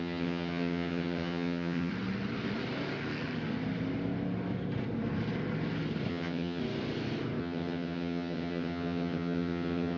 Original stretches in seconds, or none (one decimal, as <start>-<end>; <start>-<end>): 1.9-6.1; 6.6-7.4